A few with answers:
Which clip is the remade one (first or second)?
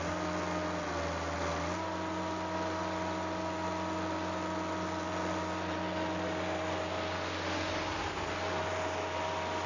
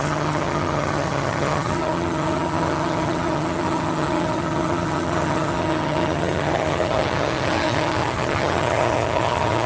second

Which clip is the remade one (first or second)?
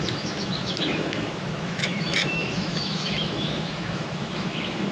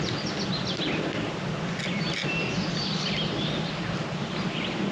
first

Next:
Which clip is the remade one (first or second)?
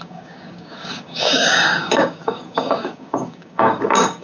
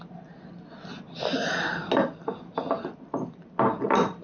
first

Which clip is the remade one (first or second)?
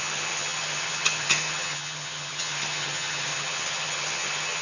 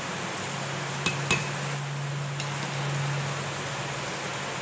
first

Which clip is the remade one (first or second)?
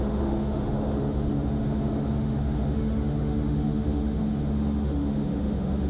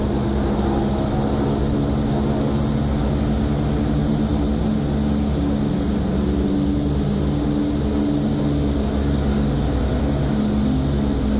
first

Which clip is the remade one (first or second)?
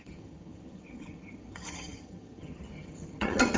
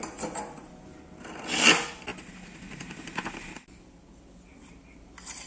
first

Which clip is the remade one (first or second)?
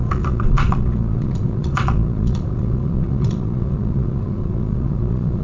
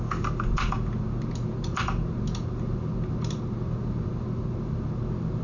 first